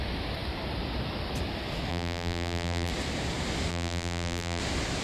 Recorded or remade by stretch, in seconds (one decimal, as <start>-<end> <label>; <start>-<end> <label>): 0.0-1.9 recorded; 1.9-2.9 remade; 2.9-3.7 recorded; 3.7-4.6 remade; 4.6-5.0 recorded

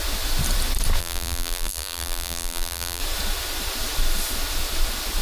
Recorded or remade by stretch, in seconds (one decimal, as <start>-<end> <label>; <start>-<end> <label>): 0.0-1.0 recorded; 1.0-3.0 remade; 3.0-5.2 recorded

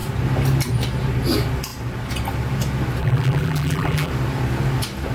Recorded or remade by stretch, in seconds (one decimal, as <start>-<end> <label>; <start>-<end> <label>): 0.0-3.0 recorded; 3.0-4.1 remade; 4.1-5.1 recorded